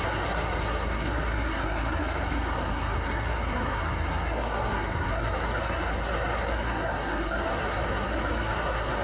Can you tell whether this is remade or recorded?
remade